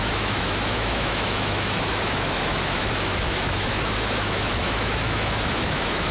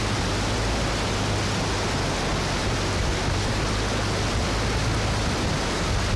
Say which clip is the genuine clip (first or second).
second